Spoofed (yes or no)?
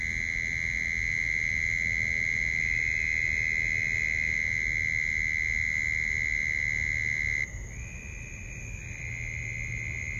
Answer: no